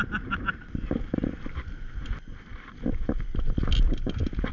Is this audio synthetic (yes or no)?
no